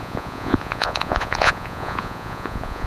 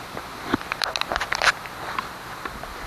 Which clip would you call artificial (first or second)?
first